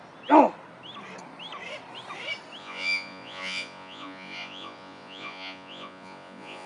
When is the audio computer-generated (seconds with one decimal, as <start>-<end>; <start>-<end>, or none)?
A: 2.6-6.7

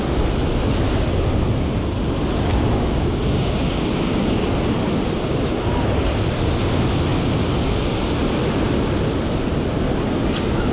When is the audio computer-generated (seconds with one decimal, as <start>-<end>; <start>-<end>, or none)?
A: 2.5-4.5